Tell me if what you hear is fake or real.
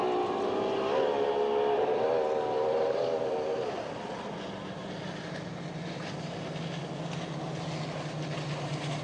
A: real